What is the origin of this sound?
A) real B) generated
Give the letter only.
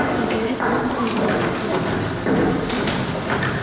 A